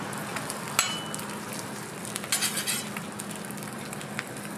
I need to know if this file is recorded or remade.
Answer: recorded